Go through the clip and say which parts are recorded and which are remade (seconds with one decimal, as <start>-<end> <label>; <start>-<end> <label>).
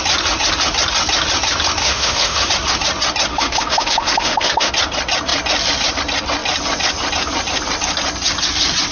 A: 0.0-1.8 recorded; 1.8-2.5 remade; 2.5-3.3 recorded; 3.3-4.7 remade; 4.7-8.9 recorded